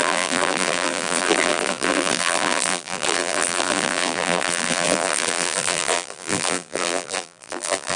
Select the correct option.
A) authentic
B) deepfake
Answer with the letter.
B